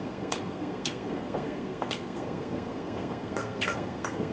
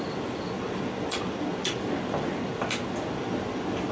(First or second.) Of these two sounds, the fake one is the first